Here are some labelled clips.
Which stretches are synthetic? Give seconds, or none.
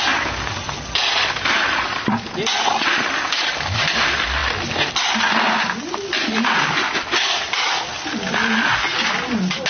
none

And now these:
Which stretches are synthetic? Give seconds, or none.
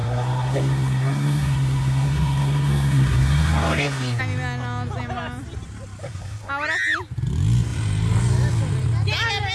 0.0-4.2 (codec, SNAC); 6.0-6.5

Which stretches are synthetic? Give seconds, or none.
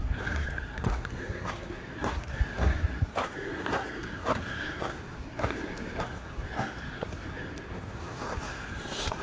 0.0-9.2 (codec, SNAC)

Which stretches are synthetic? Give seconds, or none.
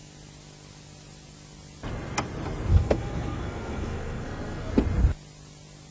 2.7-4.7 (codec, SNAC)